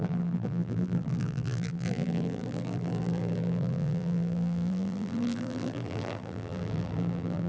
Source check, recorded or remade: remade